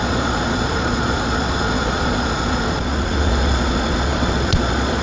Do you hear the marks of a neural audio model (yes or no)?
yes